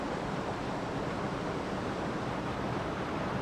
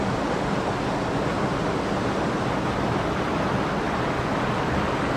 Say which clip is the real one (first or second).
second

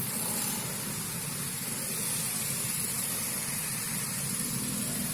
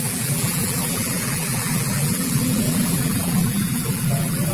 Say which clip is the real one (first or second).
first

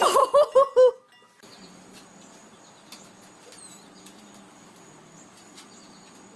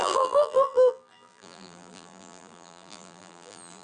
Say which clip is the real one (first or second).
first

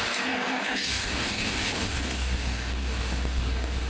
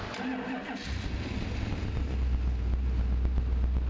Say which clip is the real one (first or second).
second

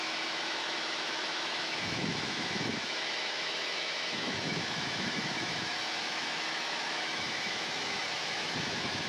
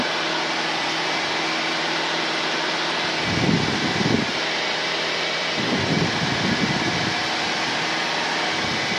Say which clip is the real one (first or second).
second